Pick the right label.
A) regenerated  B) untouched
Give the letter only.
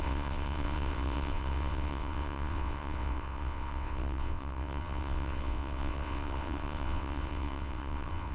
A